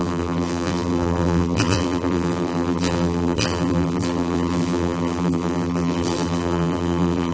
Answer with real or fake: fake